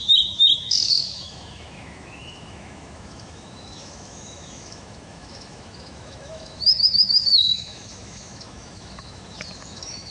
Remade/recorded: remade